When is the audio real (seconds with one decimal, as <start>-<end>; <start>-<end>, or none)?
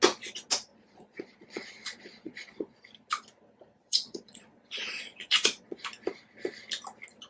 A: 0.0-0.7; 2.8-3.8; 5.8-7.3